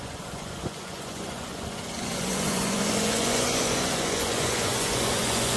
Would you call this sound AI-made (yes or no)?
yes